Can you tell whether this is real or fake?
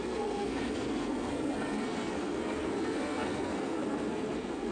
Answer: fake